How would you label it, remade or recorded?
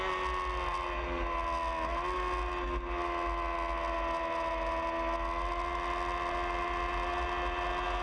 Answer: recorded